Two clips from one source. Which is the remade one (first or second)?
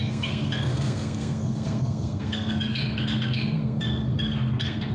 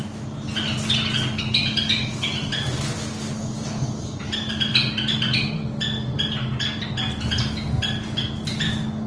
first